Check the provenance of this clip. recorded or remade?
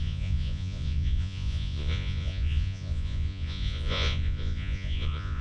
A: remade